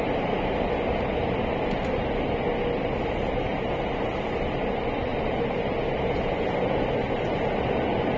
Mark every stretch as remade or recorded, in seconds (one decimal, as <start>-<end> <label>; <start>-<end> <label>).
0.0-8.2 recorded